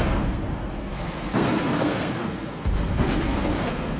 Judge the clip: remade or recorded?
remade